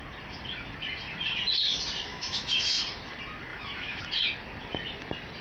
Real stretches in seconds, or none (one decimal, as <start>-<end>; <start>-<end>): 0.0-2.1; 2.8-3.5; 4.0-5.4